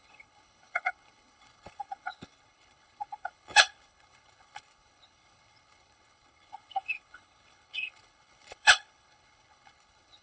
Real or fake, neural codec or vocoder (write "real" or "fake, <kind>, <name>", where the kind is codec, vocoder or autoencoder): fake, codec, HILCodec